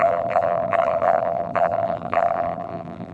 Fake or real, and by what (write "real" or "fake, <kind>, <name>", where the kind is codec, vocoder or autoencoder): fake, vocoder, BigVGAN v2